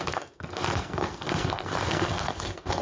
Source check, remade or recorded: remade